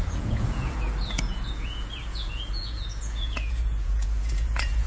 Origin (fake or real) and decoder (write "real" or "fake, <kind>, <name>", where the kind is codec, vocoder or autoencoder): fake, vocoder, Vocos